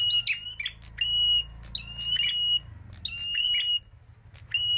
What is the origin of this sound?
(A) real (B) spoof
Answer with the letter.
A